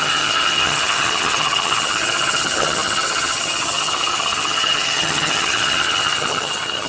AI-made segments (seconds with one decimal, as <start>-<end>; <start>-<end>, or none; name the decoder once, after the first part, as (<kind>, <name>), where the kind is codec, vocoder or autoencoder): 0.0-6.9 (vocoder, HiFi-GAN)